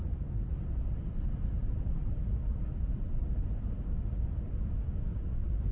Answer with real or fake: real